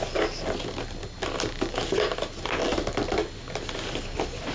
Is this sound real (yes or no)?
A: yes